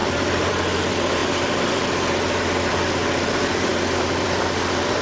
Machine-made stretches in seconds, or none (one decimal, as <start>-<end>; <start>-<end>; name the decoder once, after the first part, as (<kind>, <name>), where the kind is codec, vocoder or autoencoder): 0.0-0.5 (vocoder, BigVGAN v2); 3.7-4.4